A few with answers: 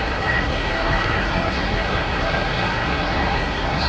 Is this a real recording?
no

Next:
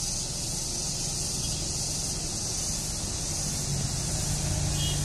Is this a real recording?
yes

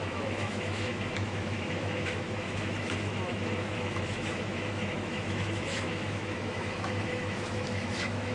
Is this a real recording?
no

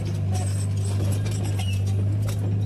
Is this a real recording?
yes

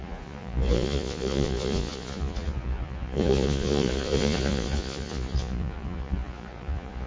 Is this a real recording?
no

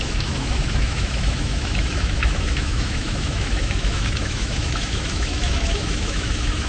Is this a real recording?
no